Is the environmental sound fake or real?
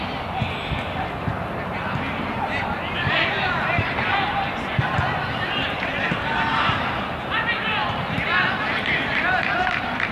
fake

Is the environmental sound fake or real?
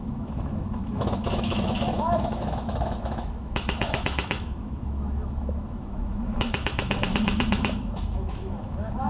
fake